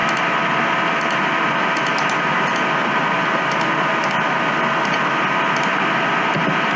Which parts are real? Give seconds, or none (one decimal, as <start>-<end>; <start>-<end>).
0.0-6.8